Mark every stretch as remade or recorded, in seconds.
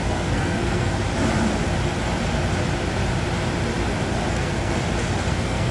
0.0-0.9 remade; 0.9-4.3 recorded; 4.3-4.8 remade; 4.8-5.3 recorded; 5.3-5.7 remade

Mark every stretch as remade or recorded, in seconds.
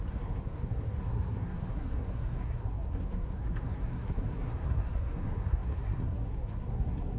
0.0-7.2 remade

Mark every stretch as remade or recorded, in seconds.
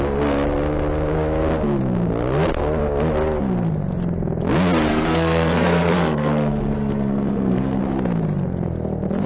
0.0-4.9 recorded; 4.9-7.8 remade; 7.8-9.3 recorded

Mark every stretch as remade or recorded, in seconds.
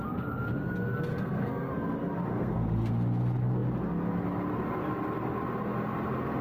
0.0-1.1 recorded; 1.1-1.7 remade; 1.7-2.3 recorded; 2.3-2.9 remade; 2.9-6.4 recorded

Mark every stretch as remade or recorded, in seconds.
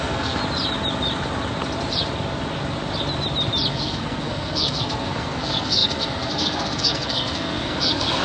0.0-0.4 remade; 0.4-3.7 recorded; 3.7-8.2 remade